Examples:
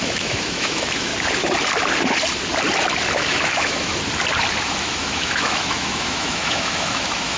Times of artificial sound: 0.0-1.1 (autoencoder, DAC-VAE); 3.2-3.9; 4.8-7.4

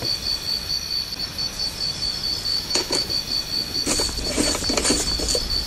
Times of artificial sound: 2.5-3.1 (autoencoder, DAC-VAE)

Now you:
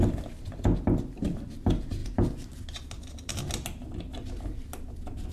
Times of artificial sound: none

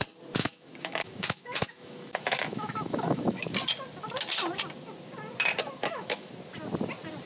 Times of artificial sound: 0.4-3.4 (autoencoder, DAC-VAE); 5.8-6.3

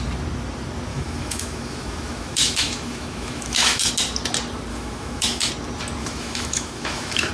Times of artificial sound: 0.9-3.9 (autoencoder, DAC-VAE); 4.7-5.5; 6.0-7.3